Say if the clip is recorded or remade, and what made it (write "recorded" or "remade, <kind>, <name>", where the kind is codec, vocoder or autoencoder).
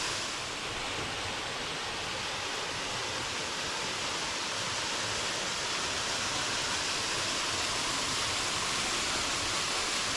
recorded